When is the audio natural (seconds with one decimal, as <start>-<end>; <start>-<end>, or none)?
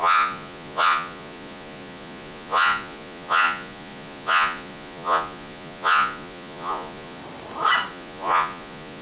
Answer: 7.2-7.9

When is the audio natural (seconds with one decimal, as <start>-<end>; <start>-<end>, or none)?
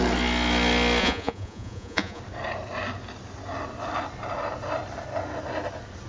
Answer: 0.0-1.0; 2.2-6.1